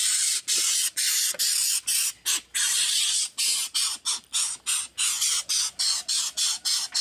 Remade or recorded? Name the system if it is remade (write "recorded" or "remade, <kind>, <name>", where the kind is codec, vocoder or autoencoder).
recorded